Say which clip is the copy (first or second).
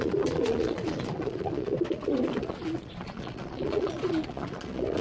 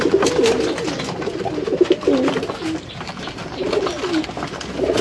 first